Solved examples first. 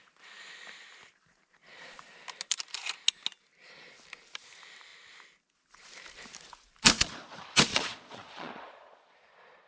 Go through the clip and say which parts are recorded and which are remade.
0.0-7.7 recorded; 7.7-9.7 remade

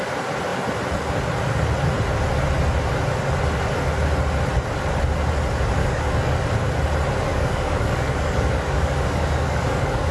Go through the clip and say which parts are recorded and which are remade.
0.0-5.8 recorded; 5.8-6.5 remade; 6.5-7.3 recorded; 7.3-10.1 remade

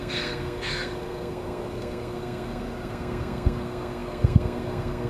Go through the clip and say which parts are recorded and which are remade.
0.0-5.1 remade

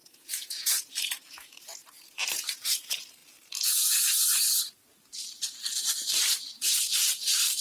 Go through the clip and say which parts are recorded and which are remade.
0.0-0.9 remade; 0.9-7.6 recorded

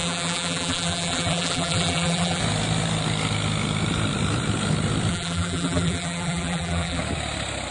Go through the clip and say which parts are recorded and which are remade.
0.0-2.4 remade; 2.4-5.1 recorded; 5.1-7.0 remade; 7.0-7.7 recorded